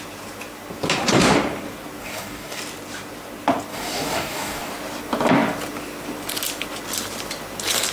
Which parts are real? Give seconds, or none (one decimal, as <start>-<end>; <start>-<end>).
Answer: 0.0-2.0; 2.6-3.7; 4.7-7.9